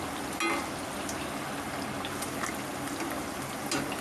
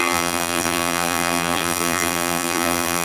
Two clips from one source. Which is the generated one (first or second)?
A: second